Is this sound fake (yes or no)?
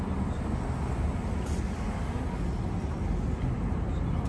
no